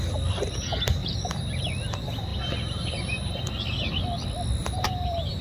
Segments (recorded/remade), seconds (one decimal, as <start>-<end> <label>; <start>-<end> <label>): 0.0-1.0 recorded; 1.0-1.6 remade; 1.6-2.3 recorded; 2.3-3.5 remade; 3.5-4.6 recorded; 4.6-5.4 remade